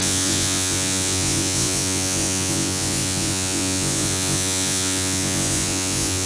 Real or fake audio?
fake